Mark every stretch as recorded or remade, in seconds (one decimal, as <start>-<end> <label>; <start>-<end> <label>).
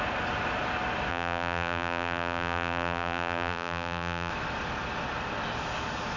0.0-1.1 recorded; 1.1-4.3 remade; 4.3-6.2 recorded